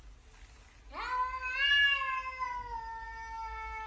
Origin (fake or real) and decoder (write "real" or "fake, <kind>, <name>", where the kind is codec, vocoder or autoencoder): real